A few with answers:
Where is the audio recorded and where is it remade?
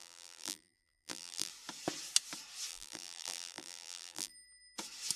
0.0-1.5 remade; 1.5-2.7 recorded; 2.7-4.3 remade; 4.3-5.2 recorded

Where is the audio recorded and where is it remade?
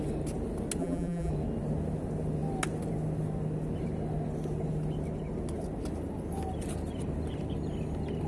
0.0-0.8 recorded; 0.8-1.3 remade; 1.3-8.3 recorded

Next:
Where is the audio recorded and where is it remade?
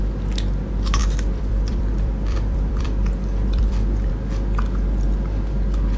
0.0-1.0 recorded; 1.0-4.1 remade; 4.1-6.0 recorded